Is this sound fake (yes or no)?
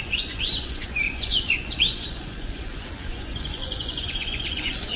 yes